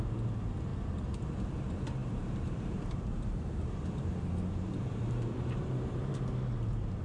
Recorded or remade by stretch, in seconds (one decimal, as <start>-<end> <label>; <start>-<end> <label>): 0.0-2.0 recorded; 2.0-6.2 remade; 6.2-7.0 recorded